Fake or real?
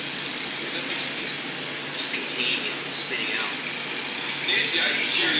real